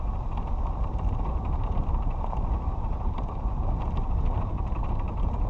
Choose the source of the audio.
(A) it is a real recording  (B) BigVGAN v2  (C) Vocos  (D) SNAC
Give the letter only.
A